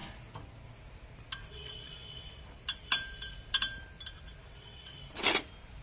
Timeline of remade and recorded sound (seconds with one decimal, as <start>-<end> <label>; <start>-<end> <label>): 0.0-1.4 recorded; 1.4-2.4 remade; 2.4-4.4 recorded; 4.4-5.0 remade; 5.0-5.8 recorded